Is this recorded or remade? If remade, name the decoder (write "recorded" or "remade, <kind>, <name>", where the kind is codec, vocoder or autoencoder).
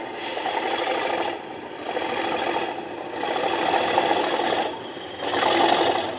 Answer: recorded